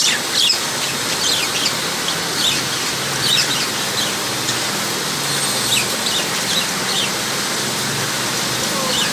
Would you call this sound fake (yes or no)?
no